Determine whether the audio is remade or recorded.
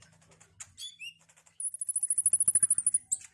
recorded